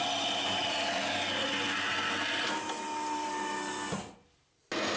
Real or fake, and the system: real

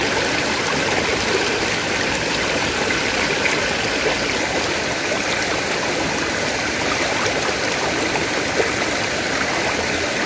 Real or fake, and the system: fake, vocoder, BigVGAN v2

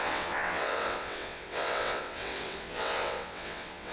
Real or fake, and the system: fake, vocoder, WaveNeXt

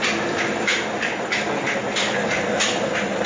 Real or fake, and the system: real